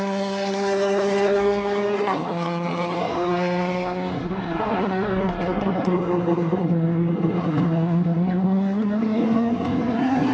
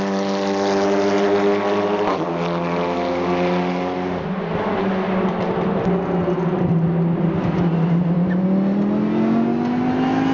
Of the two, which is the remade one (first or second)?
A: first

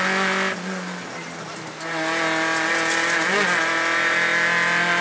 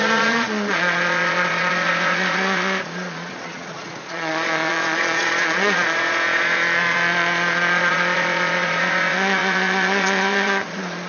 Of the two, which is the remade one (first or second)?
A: second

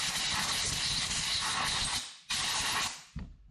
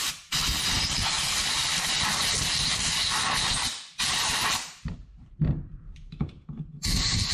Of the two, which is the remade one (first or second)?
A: second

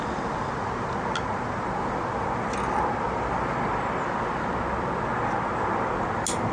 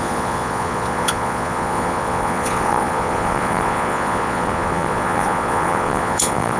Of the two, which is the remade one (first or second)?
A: second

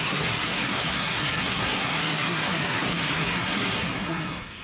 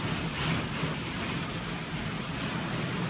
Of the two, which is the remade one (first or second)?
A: first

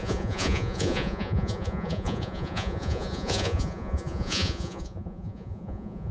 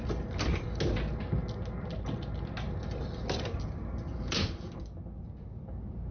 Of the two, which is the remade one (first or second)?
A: first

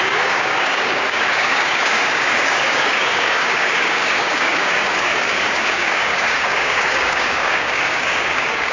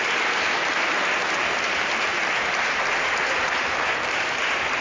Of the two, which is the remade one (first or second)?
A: first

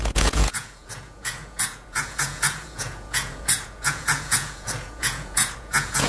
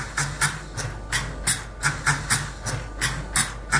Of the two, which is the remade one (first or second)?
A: first